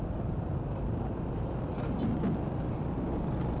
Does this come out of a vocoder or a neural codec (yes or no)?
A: no